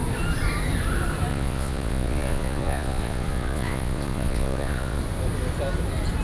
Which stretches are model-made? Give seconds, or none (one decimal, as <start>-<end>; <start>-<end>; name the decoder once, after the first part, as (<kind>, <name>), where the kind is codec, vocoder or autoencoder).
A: 1.3-5.0 (vocoder, Vocos)

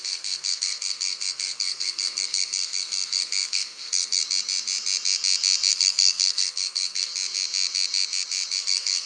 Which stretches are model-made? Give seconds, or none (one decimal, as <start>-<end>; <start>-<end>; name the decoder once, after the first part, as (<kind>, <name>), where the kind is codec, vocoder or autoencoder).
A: 0.0-4.2 (codec, SNAC); 5.7-7.1; 8.6-9.1